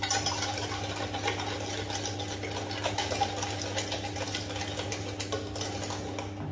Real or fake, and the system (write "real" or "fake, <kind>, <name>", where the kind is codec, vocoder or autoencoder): real